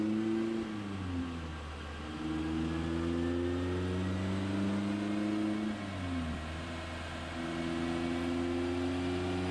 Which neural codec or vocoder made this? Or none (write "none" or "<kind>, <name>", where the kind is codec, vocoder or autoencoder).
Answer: none